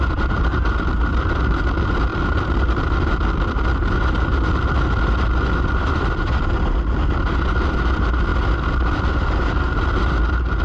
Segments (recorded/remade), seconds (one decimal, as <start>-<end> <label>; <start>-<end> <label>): 0.0-1.1 recorded; 1.1-1.6 remade; 1.6-2.1 recorded; 2.1-6.5 remade; 6.5-8.3 recorded; 8.3-9.1 remade; 9.1-10.6 recorded